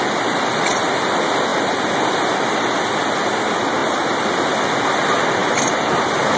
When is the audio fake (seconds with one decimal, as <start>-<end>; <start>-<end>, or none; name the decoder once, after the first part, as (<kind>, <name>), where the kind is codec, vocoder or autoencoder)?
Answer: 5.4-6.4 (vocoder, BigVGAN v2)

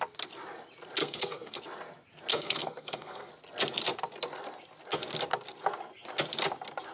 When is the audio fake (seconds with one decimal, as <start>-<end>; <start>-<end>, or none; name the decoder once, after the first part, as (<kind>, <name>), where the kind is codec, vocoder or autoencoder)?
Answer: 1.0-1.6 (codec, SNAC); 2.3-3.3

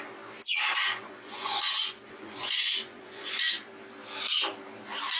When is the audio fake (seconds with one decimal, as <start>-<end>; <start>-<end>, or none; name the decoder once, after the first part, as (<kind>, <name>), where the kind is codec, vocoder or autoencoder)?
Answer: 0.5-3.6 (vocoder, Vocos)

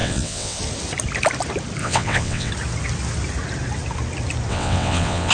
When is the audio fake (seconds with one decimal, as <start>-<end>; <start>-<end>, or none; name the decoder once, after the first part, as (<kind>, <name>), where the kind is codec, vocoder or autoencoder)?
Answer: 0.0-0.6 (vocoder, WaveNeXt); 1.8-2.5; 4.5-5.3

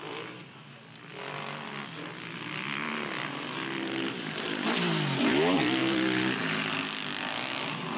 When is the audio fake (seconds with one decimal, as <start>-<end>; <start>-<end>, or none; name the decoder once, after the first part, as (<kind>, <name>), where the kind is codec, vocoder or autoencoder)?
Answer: none